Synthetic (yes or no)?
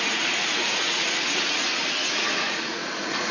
yes